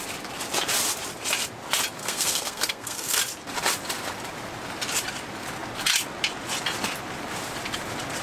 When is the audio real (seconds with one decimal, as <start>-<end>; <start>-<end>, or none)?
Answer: 0.0-2.0; 3.2-8.2